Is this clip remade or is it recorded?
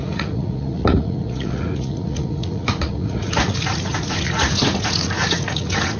remade